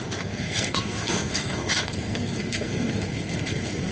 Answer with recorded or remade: remade